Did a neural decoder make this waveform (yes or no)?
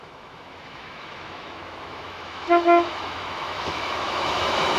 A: yes